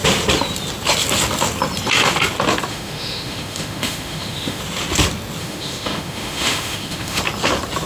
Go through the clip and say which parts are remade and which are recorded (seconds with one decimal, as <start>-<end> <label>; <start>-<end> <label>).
0.0-2.7 recorded; 2.7-4.6 remade; 4.6-5.4 recorded; 5.4-7.2 remade; 7.2-7.9 recorded